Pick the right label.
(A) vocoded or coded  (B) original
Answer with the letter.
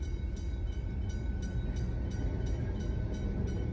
B